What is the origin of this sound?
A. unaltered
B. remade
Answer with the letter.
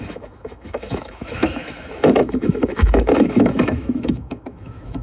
B